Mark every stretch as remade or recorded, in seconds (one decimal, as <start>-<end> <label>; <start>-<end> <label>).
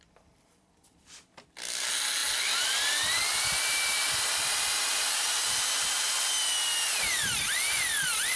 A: 0.0-8.4 recorded